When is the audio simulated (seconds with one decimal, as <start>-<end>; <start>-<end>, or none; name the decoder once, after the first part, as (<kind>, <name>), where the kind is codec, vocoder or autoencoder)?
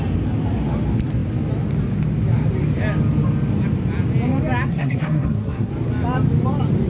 4.7-5.7 (codec, SNAC)